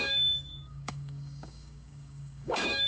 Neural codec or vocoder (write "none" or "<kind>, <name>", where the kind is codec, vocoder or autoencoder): codec, DAC